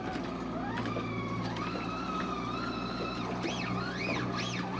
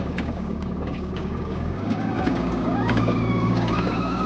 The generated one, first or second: second